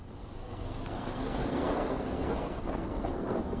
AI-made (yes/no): yes